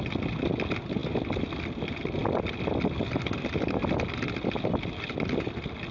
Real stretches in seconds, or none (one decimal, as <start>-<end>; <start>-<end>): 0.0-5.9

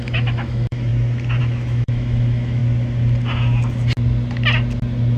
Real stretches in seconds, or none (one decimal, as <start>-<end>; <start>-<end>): 0.9-1.4; 2.6-5.2

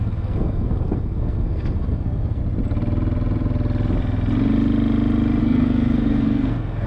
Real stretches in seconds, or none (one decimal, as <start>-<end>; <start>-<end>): 2.4-5.4

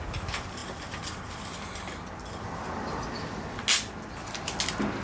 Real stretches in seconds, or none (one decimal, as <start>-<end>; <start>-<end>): 0.0-5.0

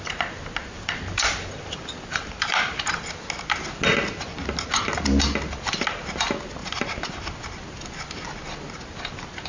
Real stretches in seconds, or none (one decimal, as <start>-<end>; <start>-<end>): 0.0-0.6; 3.0-6.6; 7.3-9.5

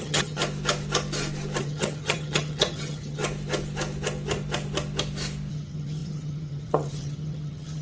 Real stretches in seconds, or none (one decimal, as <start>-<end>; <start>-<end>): 0.4-1.6; 3.2-5.5

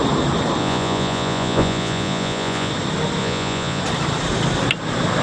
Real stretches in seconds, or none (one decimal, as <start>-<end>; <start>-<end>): 0.0-0.6; 2.7-3.2; 3.8-5.2